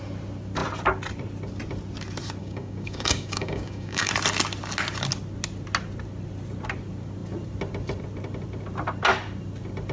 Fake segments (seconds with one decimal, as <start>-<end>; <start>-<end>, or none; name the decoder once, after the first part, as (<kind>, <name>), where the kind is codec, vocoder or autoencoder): 2.4-4.1 (codec, DAC)